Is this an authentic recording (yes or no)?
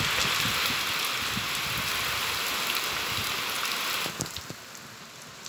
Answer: yes